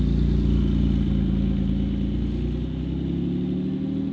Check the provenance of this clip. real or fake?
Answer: real